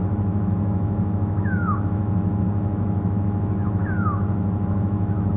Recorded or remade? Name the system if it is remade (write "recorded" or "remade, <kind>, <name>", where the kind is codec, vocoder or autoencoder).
remade, autoencoder, DAC-VAE